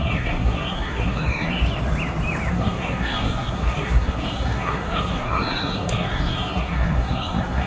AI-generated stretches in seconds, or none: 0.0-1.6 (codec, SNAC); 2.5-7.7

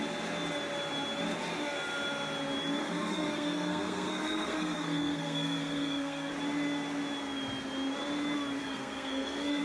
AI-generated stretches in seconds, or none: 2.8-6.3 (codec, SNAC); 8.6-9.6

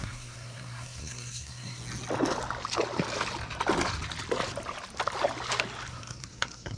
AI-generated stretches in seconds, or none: 0.0-1.8 (codec, SNAC); 5.9-6.8

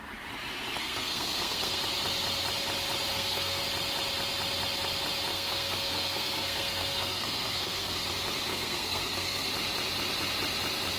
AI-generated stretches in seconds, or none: 0.8-1.8 (codec, SNAC); 3.1-3.6; 5.3-8.1; 8.5-9.5